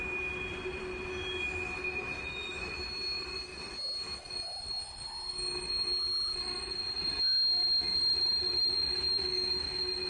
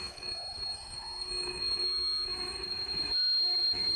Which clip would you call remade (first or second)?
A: second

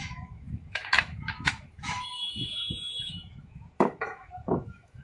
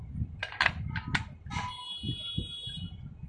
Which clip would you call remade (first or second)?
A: first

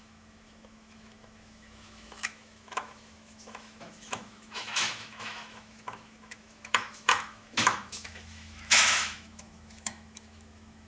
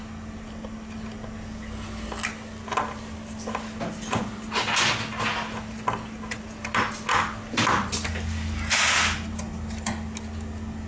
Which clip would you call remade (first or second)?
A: first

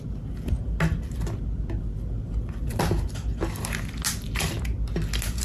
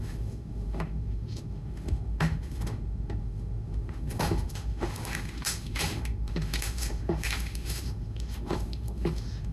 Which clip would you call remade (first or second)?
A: second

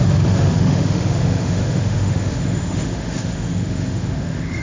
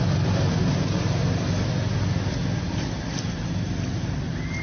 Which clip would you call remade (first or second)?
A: first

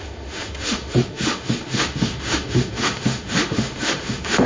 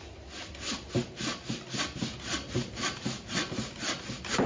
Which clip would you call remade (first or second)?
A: first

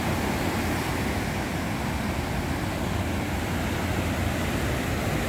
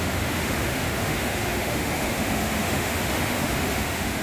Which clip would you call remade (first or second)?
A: second